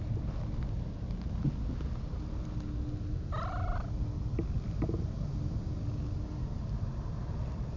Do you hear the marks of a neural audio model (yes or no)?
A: no